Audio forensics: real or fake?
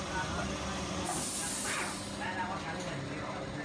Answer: real